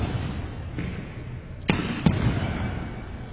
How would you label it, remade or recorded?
recorded